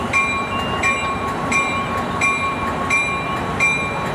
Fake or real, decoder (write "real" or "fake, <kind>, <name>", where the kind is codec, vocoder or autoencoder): fake, vocoder, BigVGAN v2